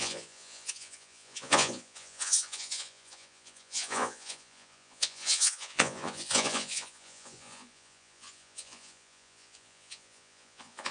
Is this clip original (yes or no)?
no